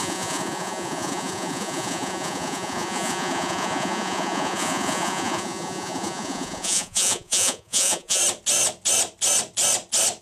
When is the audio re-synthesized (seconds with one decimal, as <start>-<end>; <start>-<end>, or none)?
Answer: 0.0-8.2